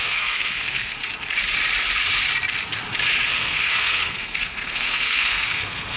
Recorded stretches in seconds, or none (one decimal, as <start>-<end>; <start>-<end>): 1.0-3.4